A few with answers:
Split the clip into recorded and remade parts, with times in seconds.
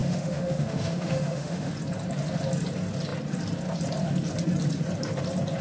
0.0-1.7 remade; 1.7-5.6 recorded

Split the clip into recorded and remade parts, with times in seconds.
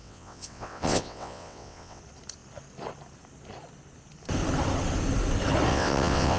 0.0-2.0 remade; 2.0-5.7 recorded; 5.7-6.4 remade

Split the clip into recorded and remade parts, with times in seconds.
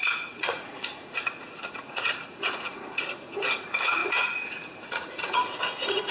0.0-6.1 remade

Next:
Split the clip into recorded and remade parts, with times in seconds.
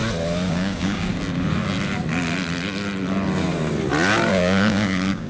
0.0-0.5 recorded; 0.5-1.1 remade; 1.1-4.3 recorded; 4.3-5.3 remade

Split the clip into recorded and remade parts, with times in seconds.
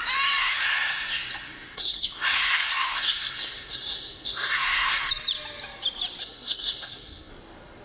0.0-0.4 recorded; 0.4-5.1 remade; 5.1-6.2 recorded; 6.2-7.3 remade; 7.3-7.8 recorded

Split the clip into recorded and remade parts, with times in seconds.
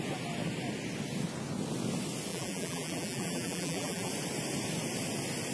0.0-2.3 recorded; 2.3-4.1 remade; 4.1-5.5 recorded